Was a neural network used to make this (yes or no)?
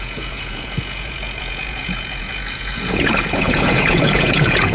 yes